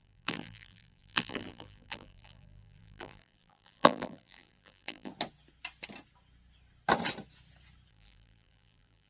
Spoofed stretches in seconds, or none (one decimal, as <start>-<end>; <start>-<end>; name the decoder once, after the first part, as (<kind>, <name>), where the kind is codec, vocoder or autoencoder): 0.0-5.1 (vocoder, BigVGAN v2); 7.9-9.1